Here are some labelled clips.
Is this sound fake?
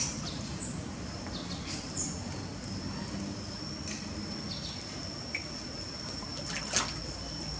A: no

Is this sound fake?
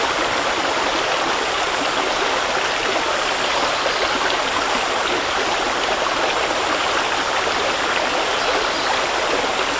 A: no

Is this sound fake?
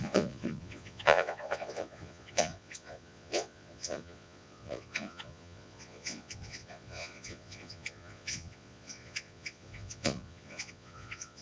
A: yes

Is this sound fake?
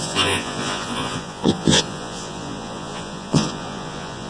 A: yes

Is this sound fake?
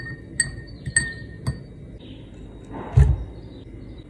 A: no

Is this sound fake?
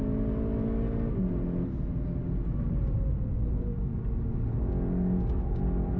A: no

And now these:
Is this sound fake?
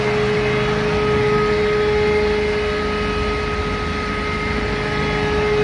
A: no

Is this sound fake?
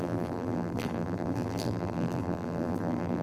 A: yes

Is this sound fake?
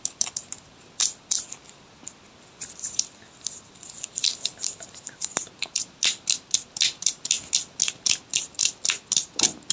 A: no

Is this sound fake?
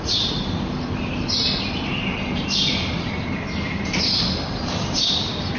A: no